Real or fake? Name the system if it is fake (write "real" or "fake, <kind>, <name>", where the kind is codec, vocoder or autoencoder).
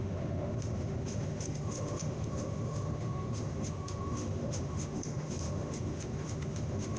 fake, autoencoder, DAC-VAE